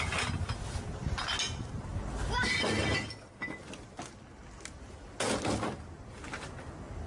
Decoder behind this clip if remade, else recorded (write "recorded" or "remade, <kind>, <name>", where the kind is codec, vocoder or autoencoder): recorded